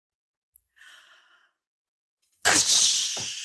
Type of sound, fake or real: real